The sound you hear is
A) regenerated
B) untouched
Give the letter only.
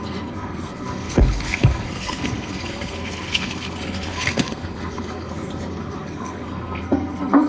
A